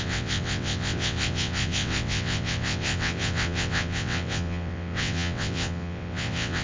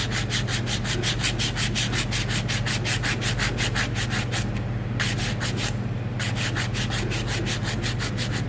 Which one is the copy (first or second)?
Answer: first